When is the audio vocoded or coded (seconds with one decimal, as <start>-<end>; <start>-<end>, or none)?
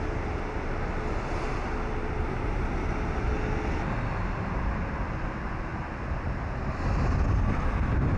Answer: none